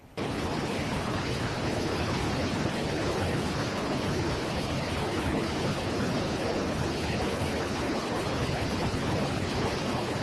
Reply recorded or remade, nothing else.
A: remade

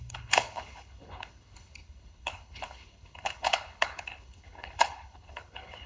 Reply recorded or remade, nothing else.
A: remade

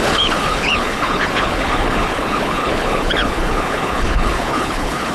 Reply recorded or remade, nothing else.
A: remade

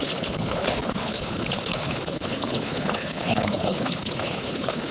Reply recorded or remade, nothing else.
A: remade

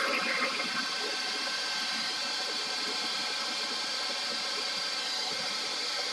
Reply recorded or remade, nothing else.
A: recorded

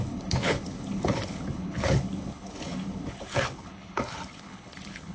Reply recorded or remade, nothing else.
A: remade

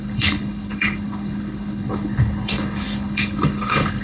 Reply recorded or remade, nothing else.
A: remade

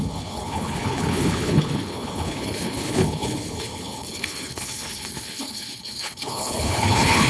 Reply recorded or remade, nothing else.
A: remade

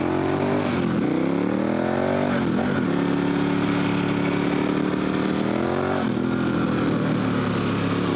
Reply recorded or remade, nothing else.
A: recorded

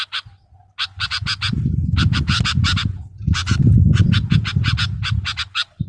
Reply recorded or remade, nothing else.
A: recorded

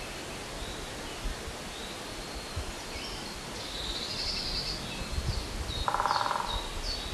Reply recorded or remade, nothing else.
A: recorded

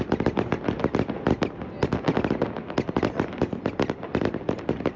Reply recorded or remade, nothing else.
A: recorded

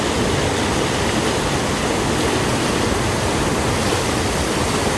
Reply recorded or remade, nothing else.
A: recorded